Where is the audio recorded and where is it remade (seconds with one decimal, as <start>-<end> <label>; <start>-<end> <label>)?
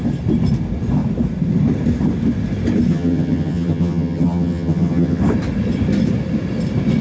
0.0-2.9 recorded; 2.9-5.2 remade; 5.2-7.0 recorded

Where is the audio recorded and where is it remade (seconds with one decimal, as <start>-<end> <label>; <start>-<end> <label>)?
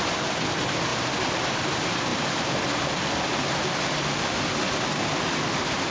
0.0-5.9 recorded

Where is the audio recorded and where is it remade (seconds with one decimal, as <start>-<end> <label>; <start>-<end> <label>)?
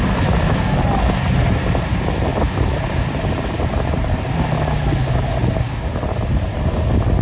0.0-7.2 recorded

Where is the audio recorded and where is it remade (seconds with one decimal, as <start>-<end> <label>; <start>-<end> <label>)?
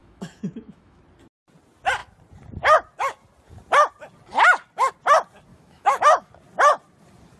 0.0-1.0 remade; 1.0-5.5 recorded; 5.5-6.3 remade; 6.3-7.4 recorded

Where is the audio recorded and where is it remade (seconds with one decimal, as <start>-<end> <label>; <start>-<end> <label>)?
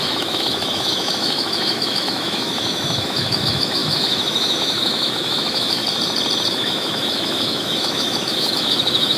0.0-5.8 remade; 5.8-6.5 recorded; 6.5-9.2 remade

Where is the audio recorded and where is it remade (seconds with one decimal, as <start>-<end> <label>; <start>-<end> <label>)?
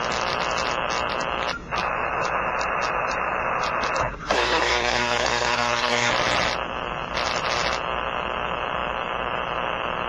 0.0-4.0 recorded; 4.0-6.1 remade; 6.1-10.1 recorded